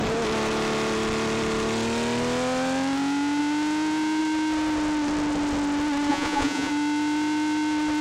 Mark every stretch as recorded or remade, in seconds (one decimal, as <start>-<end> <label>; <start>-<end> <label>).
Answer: 0.0-6.1 recorded; 6.1-6.7 remade; 6.7-8.0 recorded